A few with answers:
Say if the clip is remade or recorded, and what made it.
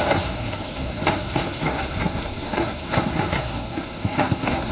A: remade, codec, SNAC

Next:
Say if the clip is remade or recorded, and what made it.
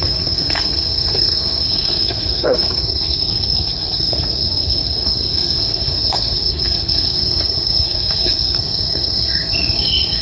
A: remade, codec, SNAC